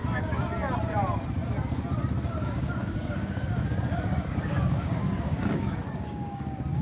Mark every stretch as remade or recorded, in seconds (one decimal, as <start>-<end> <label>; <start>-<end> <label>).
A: 0.0-2.3 recorded; 2.3-6.8 remade